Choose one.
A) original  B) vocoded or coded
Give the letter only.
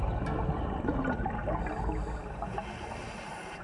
A